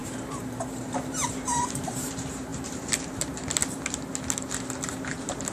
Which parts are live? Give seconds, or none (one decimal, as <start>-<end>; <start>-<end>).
3.6-4.9

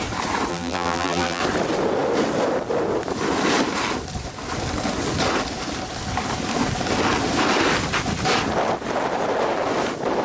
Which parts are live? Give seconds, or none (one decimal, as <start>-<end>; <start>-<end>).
0.0-0.5; 1.4-10.2